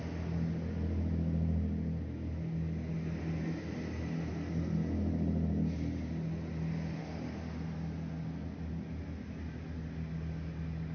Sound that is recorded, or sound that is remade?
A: recorded